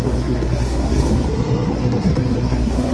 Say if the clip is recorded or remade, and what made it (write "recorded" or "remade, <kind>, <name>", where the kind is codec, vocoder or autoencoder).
remade, codec, SNAC